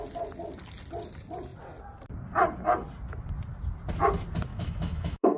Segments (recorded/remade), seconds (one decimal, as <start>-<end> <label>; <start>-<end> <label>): 0.0-4.5 recorded; 4.5-5.4 remade